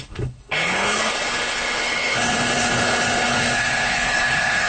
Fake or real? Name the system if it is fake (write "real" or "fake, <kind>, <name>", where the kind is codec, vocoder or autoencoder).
fake, codec, HILCodec